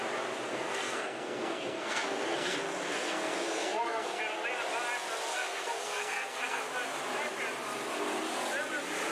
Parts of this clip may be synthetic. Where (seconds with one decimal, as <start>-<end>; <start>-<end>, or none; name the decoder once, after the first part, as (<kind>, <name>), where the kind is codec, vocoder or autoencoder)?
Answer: 0.5-4.2 (codec, SNAC); 5.3-6.6